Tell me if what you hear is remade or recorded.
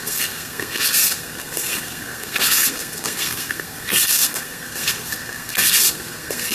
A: remade